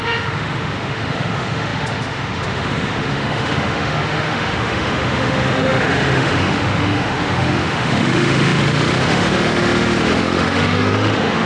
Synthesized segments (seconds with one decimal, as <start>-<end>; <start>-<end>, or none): 0.0-11.5